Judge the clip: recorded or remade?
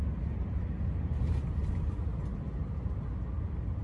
recorded